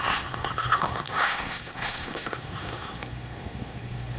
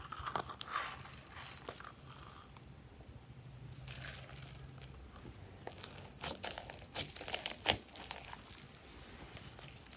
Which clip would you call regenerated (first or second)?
first